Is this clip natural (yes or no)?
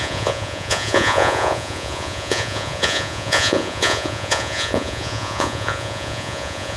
no